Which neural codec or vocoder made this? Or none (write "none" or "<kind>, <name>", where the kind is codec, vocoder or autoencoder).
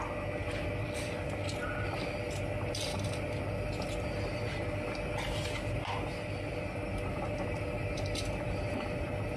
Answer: none